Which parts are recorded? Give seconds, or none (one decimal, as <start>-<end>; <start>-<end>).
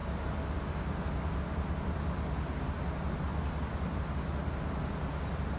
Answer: 0.0-3.3; 4.0-5.6